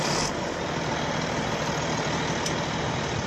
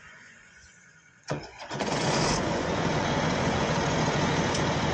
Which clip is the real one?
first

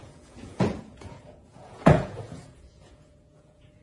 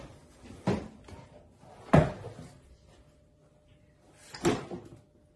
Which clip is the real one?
second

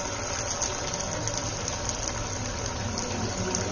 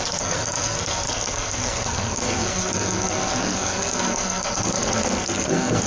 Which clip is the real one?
first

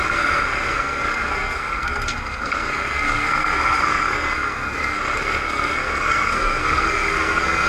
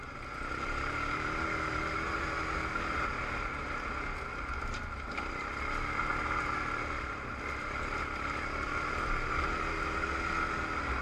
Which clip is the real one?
second